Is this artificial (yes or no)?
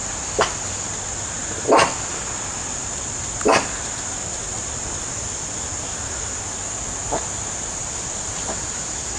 no